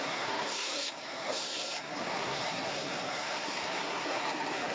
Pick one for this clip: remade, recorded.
remade